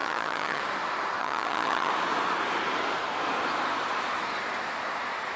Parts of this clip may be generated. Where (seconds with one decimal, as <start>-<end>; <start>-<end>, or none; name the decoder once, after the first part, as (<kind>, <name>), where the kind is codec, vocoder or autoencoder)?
0.0-0.6 (vocoder, HiFi-GAN); 1.2-1.9